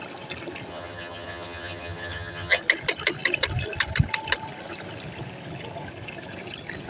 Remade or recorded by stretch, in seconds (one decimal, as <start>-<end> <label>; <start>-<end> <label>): 0.0-0.7 recorded; 0.7-2.6 remade; 2.6-6.9 recorded